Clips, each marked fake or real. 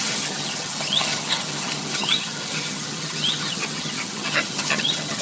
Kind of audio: fake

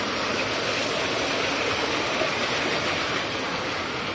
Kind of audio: real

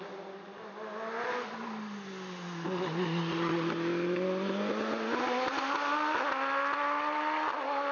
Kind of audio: real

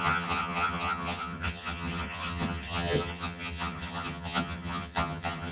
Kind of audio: fake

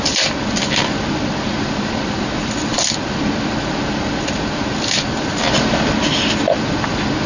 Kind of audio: real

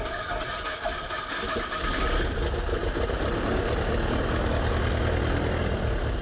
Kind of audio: real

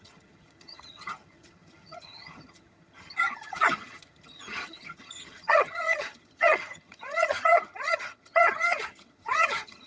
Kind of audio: fake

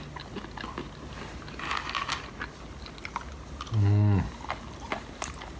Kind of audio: real